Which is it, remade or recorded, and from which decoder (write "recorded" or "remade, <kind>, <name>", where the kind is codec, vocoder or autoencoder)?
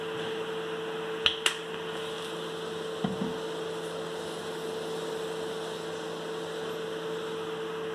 recorded